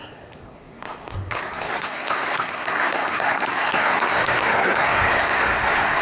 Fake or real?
fake